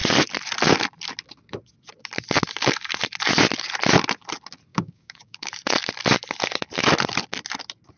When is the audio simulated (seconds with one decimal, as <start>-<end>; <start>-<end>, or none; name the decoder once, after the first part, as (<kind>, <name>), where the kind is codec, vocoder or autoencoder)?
4.7-5.5 (codec, DAC)